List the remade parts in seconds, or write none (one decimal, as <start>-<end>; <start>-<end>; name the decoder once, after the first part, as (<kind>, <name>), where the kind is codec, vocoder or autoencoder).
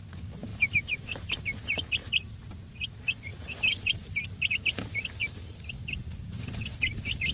0.5-1.9 (vocoder, BigVGAN v2); 3.3-4.2; 5.2-6.6